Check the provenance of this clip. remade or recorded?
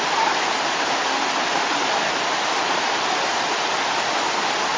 recorded